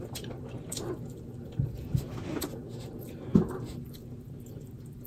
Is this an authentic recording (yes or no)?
no